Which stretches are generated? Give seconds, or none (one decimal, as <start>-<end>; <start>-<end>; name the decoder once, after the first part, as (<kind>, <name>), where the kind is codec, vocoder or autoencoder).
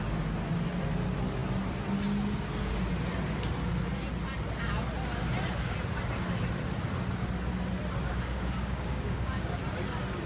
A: 8.1-9.6 (codec, DAC)